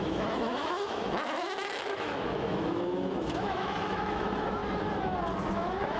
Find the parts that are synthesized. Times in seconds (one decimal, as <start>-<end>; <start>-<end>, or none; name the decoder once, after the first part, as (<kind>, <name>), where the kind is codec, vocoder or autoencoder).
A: 0.0-4.6 (autoencoder, DAC-VAE); 5.5-6.0